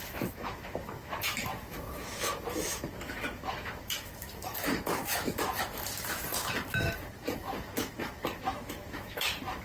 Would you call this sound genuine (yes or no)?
no